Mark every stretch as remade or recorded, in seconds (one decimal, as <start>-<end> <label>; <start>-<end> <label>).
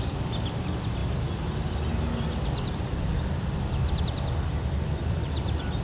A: 0.0-5.8 recorded